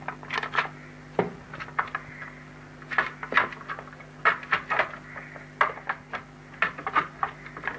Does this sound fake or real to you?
real